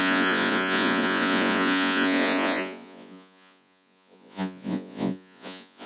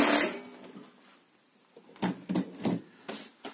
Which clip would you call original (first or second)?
second